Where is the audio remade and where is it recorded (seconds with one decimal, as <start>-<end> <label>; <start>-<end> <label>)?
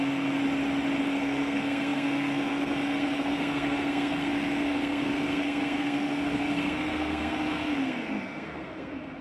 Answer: 0.0-0.4 remade; 0.4-1.0 recorded; 1.0-9.2 remade